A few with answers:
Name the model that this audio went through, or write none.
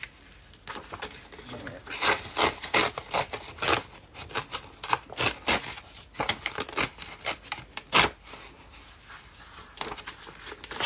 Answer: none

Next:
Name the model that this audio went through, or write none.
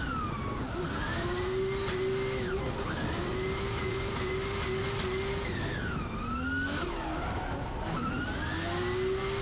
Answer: none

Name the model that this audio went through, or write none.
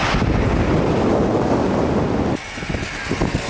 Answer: none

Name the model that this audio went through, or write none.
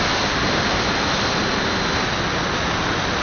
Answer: none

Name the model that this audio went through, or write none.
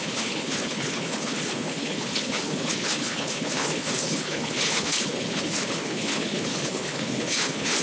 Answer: codec, HILCodec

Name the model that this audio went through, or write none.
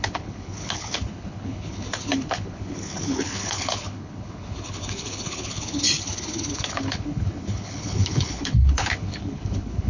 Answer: codec, HILCodec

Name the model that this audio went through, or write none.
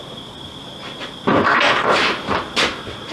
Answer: none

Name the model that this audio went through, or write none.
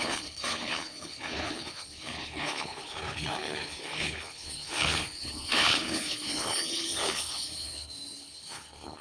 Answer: codec, HILCodec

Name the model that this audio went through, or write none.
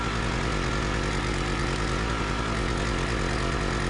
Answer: none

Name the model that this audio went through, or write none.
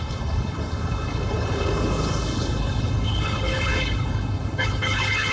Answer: codec, HILCodec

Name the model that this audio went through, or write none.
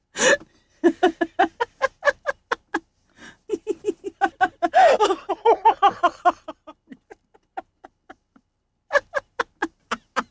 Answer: none